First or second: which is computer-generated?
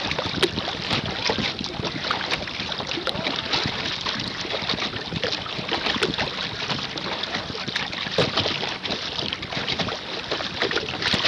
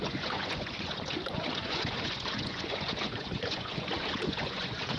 second